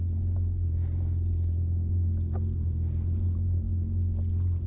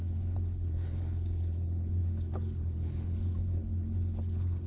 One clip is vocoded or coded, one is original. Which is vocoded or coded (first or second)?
second